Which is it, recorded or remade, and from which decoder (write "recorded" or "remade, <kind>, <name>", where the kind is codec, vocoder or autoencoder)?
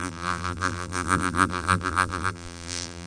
remade, vocoder, BigVGAN v2